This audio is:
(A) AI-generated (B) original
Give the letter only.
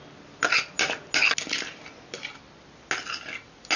B